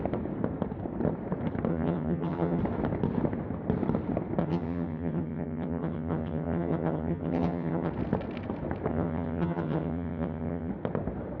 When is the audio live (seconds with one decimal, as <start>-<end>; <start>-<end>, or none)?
0.0-1.7; 2.6-4.4; 7.9-8.9; 10.7-11.4